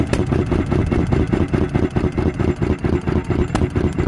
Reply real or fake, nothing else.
real